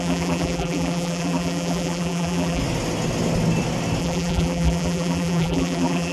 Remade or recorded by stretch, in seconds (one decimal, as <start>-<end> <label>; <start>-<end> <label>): 0.0-2.6 remade; 2.6-4.0 recorded; 4.0-6.1 remade